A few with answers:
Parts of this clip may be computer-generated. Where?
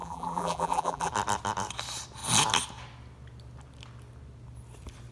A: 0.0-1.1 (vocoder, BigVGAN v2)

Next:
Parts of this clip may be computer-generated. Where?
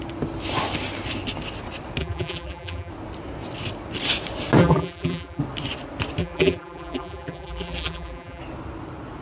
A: 2.0-2.9 (vocoder, BigVGAN v2); 4.6-5.4; 6.2-8.4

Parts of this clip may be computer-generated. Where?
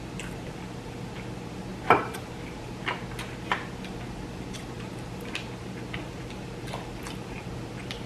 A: 1.7-2.7 (vocoder, BigVGAN v2)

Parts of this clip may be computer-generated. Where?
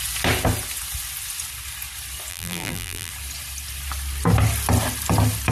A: 2.3-3.1 (vocoder, BigVGAN v2)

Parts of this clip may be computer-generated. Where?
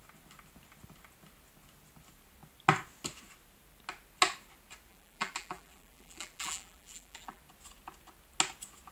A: 4.9-7.4 (vocoder, BigVGAN v2)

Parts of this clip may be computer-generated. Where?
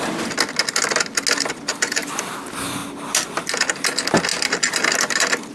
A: 1.7-2.4 (vocoder, BigVGAN v2)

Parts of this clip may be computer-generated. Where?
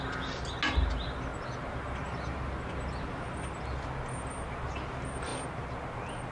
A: none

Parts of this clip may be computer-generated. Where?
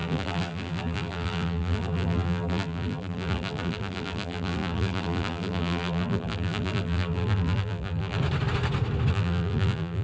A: 0.0-8.2 (vocoder, BigVGAN v2); 9.1-10.0